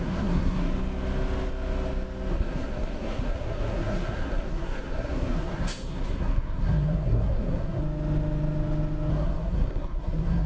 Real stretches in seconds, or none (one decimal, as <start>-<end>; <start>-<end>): 0.7-2.3; 7.8-9.1